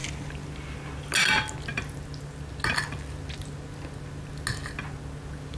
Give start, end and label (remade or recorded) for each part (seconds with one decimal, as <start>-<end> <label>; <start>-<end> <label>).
0.0-5.6 recorded

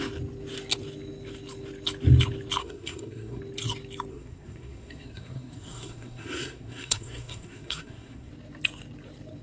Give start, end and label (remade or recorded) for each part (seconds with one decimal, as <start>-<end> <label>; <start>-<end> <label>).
0.0-2.6 recorded; 2.6-3.4 remade; 3.4-4.1 recorded; 4.1-8.3 remade; 8.3-9.4 recorded

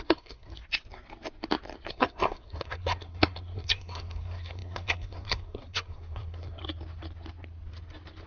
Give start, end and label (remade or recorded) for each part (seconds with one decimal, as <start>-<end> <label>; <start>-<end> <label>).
0.0-0.5 remade; 0.5-1.9 recorded; 1.9-6.6 remade; 6.6-8.3 recorded